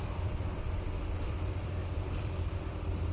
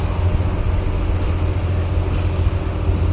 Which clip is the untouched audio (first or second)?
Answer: second